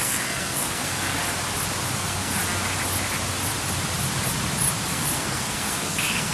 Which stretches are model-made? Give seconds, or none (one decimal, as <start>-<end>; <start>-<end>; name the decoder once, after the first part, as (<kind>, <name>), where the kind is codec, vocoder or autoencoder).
0.0-1.2 (codec, SNAC); 1.9-2.4; 4.9-6.3